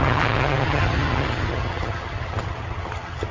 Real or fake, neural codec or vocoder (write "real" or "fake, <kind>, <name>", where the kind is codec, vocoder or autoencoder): fake, vocoder, HiFi-GAN